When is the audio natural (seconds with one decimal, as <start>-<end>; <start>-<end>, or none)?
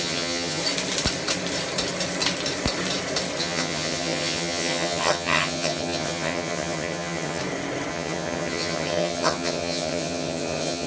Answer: 0.6-3.4; 7.4-7.9